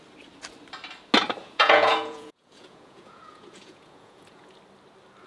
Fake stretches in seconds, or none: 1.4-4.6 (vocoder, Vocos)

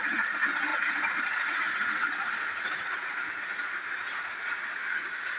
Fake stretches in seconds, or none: 0.0-5.4 (vocoder, Vocos)

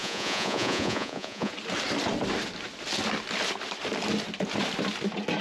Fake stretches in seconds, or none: 0.0-1.5 (vocoder, Vocos)